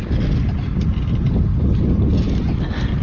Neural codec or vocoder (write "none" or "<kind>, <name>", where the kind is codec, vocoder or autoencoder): none